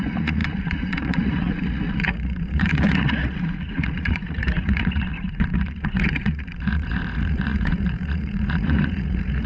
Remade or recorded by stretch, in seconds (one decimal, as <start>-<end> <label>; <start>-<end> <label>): 0.0-9.5 remade